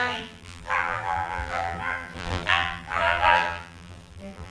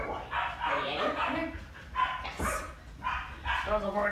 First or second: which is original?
second